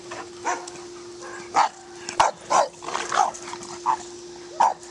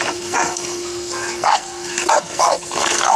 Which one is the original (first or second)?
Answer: first